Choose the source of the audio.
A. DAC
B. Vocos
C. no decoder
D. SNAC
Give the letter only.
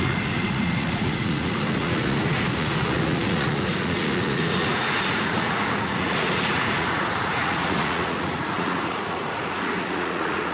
B